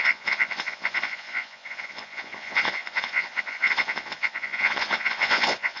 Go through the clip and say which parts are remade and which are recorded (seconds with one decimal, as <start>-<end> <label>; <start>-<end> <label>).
0.0-5.8 remade